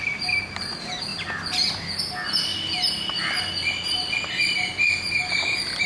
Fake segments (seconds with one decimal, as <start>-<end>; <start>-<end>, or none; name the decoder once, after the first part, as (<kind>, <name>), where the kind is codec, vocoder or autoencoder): none